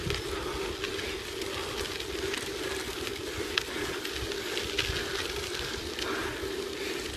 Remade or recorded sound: recorded